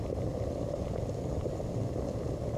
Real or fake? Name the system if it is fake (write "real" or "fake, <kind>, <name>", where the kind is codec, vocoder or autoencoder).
real